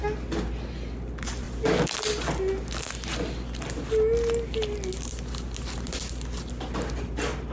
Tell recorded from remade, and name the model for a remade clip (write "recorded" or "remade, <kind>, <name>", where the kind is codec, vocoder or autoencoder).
recorded